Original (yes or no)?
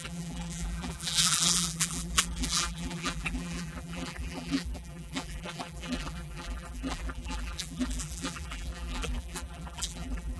no